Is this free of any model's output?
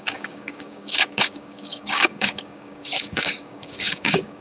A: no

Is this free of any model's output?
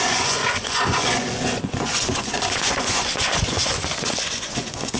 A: no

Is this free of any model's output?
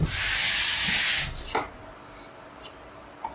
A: yes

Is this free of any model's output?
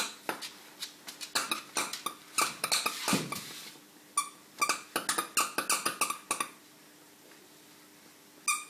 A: yes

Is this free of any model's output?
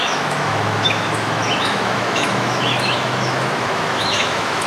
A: no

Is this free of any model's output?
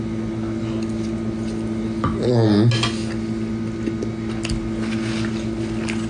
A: yes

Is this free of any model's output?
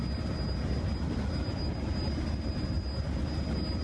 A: yes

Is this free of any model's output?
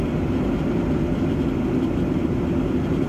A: yes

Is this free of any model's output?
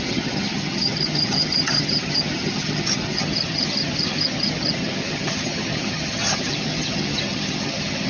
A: no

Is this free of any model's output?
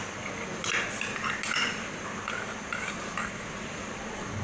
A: yes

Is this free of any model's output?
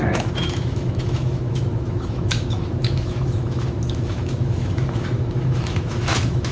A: no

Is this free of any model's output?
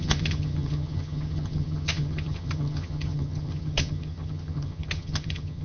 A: no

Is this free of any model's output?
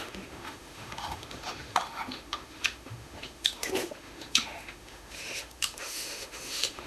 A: no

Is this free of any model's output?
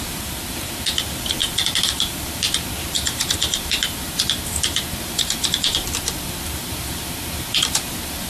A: no